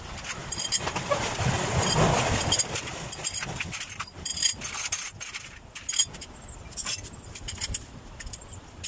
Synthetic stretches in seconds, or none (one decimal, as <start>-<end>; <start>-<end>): none